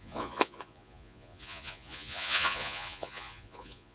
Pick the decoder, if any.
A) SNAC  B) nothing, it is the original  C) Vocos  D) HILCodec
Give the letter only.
C